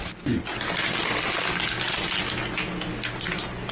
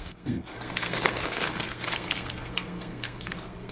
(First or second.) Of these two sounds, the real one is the first